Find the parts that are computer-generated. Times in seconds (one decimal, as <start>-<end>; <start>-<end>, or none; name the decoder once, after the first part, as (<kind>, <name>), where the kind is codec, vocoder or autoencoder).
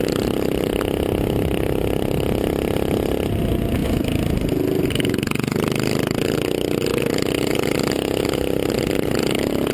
none